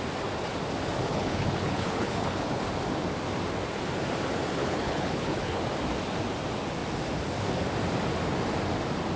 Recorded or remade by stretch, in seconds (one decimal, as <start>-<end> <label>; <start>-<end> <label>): 0.0-1.1 recorded; 1.1-2.6 remade; 2.6-4.6 recorded; 4.6-5.6 remade; 5.6-9.2 recorded